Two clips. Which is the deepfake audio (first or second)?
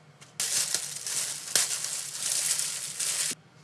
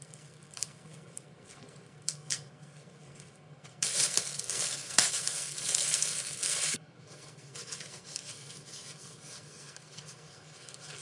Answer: second